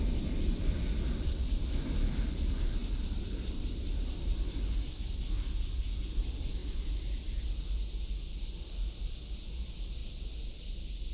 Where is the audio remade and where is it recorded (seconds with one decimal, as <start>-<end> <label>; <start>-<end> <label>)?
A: 0.0-11.1 recorded